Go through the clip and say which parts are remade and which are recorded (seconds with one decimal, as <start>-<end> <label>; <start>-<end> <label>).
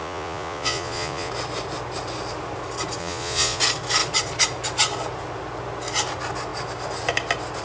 0.0-1.3 remade; 1.3-3.0 recorded; 3.0-3.6 remade; 3.6-7.6 recorded